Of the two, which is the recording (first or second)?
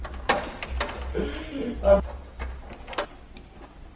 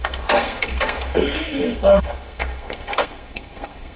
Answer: first